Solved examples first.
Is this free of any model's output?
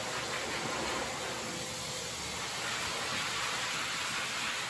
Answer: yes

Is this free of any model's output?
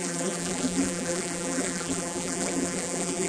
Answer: no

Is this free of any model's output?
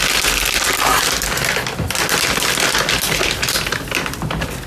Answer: yes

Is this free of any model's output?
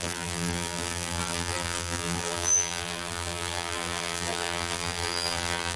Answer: no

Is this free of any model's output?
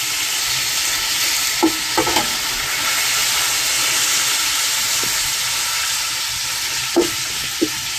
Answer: yes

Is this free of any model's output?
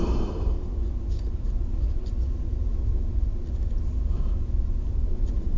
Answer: no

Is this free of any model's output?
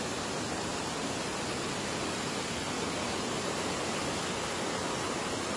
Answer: yes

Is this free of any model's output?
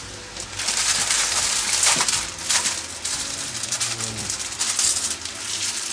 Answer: no